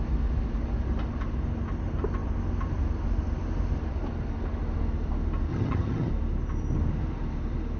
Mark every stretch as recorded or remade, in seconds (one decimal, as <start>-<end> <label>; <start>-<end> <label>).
0.0-5.5 recorded; 5.5-6.1 remade; 6.1-7.8 recorded